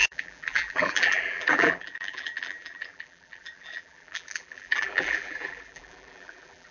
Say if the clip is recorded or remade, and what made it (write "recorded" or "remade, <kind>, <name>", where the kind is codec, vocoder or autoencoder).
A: remade, vocoder, BigVGAN v2